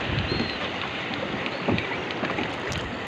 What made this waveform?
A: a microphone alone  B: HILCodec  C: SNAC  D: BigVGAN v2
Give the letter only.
A